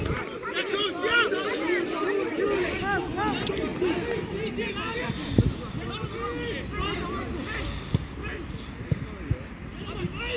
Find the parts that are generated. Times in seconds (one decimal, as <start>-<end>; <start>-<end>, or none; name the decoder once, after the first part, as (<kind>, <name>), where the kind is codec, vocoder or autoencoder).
none